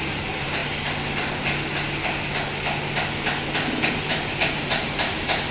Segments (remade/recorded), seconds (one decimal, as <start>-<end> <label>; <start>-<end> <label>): 0.0-0.6 remade; 0.6-3.9 recorded; 3.9-5.5 remade